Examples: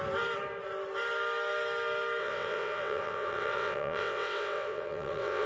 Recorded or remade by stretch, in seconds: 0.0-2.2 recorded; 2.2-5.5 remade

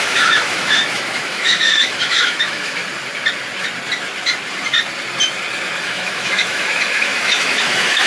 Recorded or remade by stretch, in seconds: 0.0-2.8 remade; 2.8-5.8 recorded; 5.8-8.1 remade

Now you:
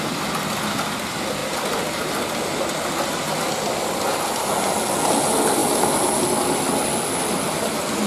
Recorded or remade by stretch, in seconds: 0.0-8.1 recorded

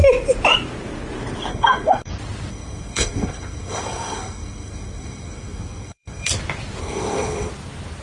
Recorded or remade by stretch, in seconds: 0.0-1.5 recorded; 1.5-2.1 remade; 2.1-2.5 recorded; 2.5-6.3 remade; 6.3-6.8 recorded; 6.8-7.5 remade; 7.5-8.0 recorded

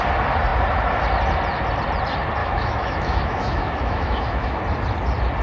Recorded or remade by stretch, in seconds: 0.0-2.4 recorded; 2.4-4.6 remade; 4.6-5.4 recorded